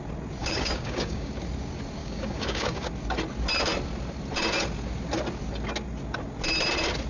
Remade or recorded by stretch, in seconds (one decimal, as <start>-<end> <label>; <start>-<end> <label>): 0.0-0.4 recorded; 0.4-1.3 remade; 1.3-2.0 recorded; 2.0-2.9 remade; 2.9-7.1 recorded